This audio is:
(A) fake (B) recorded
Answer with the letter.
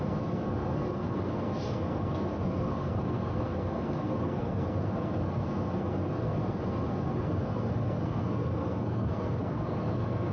A